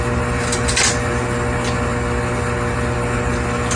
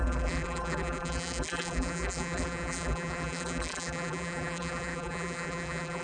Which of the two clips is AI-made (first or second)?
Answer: second